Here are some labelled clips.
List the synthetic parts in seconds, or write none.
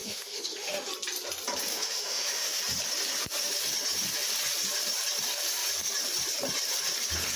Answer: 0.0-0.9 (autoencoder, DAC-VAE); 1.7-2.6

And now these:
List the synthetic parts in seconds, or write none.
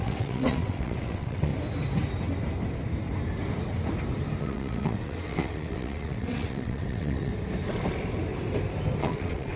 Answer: 0.0-1.5 (vocoder, WaveNeXt); 4.4-7.3; 9.0-9.6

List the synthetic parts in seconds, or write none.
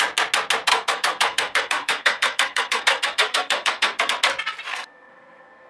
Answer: 0.7-4.1 (codec, SNAC); 4.7-5.7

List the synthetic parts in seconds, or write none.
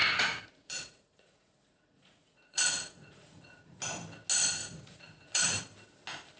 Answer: 0.0-3.8 (vocoder, Vocos); 4.6-5.6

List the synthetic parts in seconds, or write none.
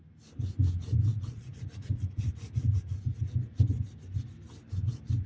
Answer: 1.1-2.2 (vocoder, Vocos)